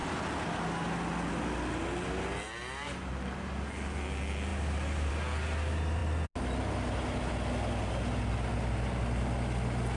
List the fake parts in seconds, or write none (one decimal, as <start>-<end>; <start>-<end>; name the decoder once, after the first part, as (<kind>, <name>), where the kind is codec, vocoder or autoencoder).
none